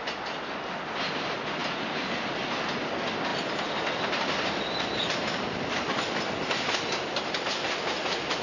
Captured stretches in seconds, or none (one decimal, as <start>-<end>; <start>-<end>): 0.0-1.6; 2.5-8.4